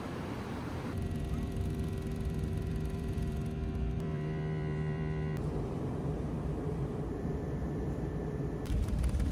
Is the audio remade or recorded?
remade